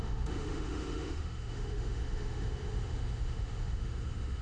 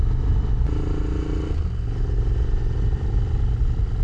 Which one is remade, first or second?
first